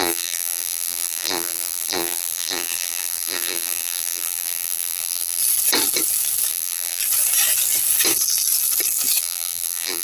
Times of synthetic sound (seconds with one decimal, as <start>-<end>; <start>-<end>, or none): 0.0-5.4; 6.5-7.0; 9.2-10.0